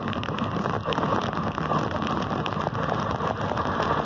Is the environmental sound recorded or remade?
recorded